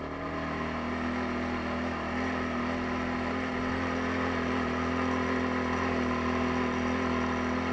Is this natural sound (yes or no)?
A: yes